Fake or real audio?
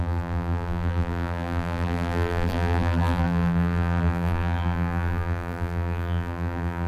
fake